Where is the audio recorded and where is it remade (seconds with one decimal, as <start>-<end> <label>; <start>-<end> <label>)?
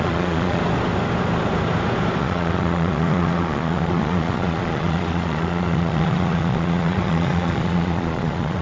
0.0-0.6 remade; 0.6-2.2 recorded; 2.2-8.6 remade